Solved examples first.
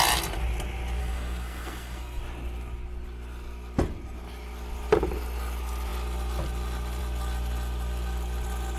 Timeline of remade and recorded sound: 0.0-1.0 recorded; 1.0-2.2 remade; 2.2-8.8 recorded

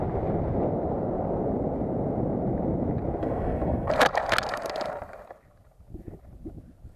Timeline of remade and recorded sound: 0.0-3.2 recorded; 3.2-3.9 remade; 3.9-7.0 recorded

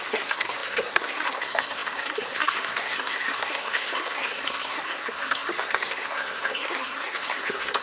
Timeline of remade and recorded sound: 0.0-7.8 remade

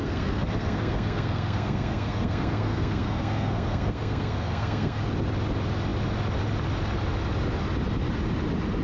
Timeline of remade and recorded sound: 0.0-5.0 remade; 5.0-8.8 recorded

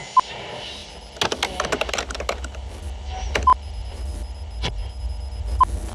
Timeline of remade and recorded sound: 0.0-5.9 recorded